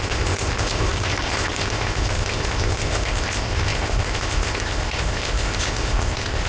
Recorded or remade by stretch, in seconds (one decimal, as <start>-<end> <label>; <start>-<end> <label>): 0.0-6.5 remade